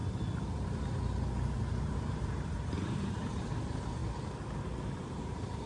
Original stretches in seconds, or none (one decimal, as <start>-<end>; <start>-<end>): 0.0-1.8; 4.0-4.6